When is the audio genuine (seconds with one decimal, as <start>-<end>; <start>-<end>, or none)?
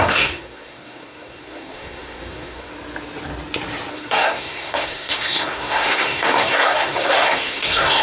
2.7-3.9